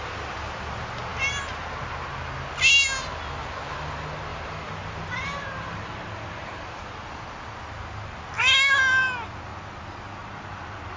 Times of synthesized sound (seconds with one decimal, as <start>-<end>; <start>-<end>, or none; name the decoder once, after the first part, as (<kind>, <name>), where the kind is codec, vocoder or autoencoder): 4.3-7.2 (vocoder, BigVGAN v2)